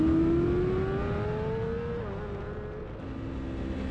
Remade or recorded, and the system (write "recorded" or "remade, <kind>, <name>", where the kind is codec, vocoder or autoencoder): recorded